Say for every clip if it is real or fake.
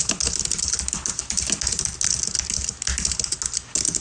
real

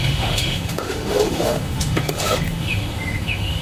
fake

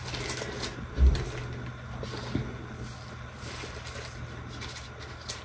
real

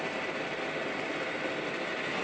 real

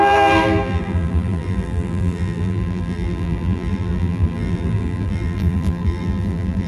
fake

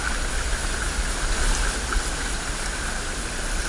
real